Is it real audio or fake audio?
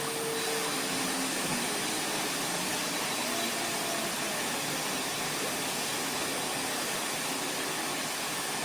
real